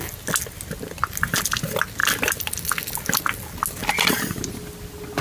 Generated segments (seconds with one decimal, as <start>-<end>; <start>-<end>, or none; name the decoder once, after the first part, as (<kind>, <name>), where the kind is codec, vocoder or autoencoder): none